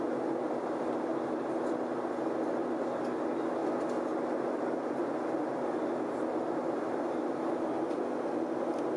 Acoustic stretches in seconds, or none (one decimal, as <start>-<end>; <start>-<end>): 0.0-9.0